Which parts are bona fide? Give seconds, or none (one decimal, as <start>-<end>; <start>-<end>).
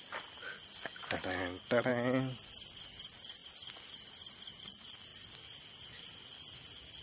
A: 0.0-7.0